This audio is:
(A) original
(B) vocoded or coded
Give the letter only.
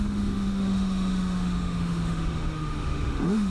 B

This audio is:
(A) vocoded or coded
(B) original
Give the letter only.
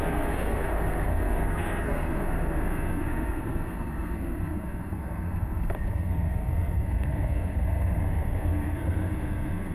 A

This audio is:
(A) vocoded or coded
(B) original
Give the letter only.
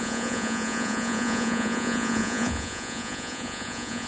A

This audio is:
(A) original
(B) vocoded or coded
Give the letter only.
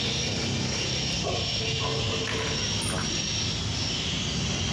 A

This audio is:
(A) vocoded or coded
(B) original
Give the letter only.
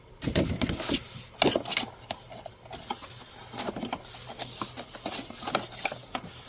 B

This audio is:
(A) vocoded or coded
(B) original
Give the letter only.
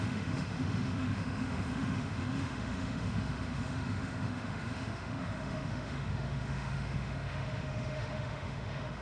A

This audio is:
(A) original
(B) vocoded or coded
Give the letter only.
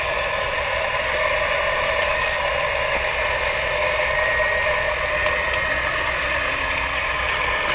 A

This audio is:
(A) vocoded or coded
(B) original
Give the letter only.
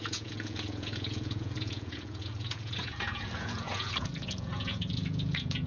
A